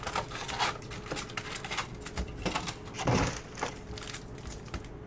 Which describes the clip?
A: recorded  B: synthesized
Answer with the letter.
A